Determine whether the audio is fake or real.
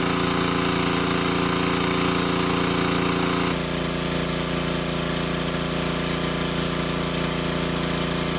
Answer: real